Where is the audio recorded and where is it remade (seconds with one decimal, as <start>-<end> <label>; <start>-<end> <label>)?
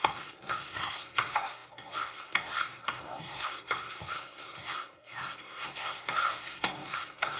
0.0-7.4 remade